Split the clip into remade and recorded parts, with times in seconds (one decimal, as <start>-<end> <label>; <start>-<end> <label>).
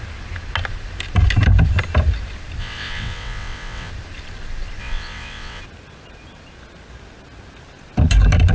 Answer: 0.0-2.6 recorded; 2.6-3.9 remade; 3.9-4.8 recorded; 4.8-5.6 remade; 5.6-8.5 recorded